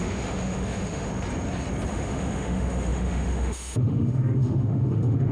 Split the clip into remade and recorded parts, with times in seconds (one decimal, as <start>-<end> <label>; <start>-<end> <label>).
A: 0.0-1.1 remade; 1.1-1.9 recorded; 1.9-5.3 remade

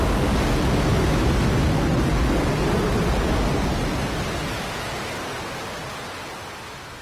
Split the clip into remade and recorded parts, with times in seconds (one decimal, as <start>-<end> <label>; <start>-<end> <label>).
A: 0.0-0.9 recorded; 0.9-1.4 remade; 1.4-7.0 recorded

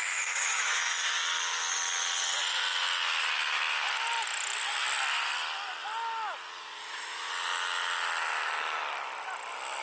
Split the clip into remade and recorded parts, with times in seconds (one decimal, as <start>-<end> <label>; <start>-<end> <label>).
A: 0.0-1.2 remade; 1.2-6.8 recorded; 6.8-7.3 remade; 7.3-9.8 recorded

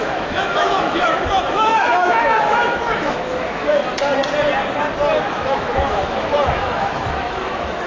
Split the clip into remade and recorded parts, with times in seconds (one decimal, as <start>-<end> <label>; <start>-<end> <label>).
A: 0.0-3.8 remade; 3.8-5.3 recorded; 5.3-7.9 remade